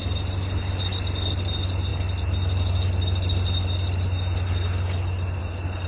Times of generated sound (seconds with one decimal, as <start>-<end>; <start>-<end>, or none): none